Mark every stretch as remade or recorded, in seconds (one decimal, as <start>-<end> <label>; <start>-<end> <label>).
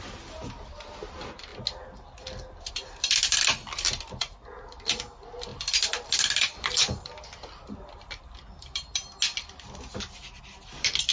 0.0-11.1 recorded